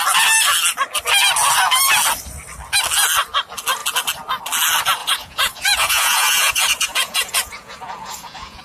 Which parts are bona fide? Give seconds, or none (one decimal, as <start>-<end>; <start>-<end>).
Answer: 0.0-5.0